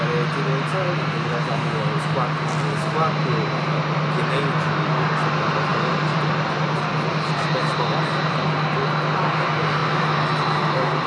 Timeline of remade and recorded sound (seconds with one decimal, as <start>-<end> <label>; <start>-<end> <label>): 0.0-11.1 recorded

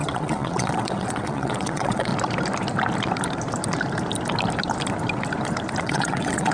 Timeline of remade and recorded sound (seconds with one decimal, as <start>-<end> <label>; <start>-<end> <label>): 0.0-2.1 remade; 2.1-5.8 recorded; 5.8-6.5 remade

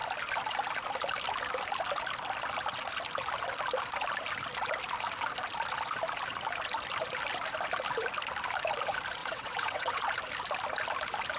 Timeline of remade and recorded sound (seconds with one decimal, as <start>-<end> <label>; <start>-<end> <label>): 0.0-9.2 recorded; 9.2-10.0 remade; 10.0-11.4 recorded

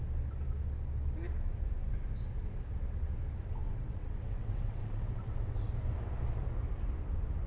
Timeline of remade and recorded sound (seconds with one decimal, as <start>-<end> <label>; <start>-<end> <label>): 0.0-3.6 recorded; 3.6-5.7 remade; 5.7-7.5 recorded

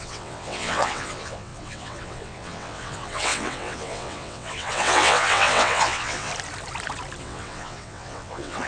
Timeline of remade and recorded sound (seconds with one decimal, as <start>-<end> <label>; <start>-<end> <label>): 0.0-6.3 remade; 6.3-7.2 recorded; 7.2-8.7 remade

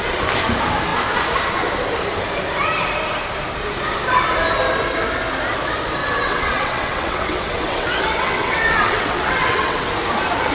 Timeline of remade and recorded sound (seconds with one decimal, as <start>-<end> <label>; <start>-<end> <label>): 0.0-6.0 recorded; 6.0-9.9 remade; 9.9-10.5 recorded